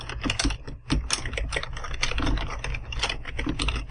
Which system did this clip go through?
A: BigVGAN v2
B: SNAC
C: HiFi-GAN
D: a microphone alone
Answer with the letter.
D